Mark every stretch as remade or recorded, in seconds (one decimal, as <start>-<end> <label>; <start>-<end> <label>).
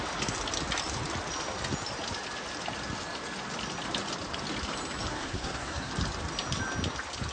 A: 0.0-5.1 recorded; 5.1-5.9 remade; 5.9-7.3 recorded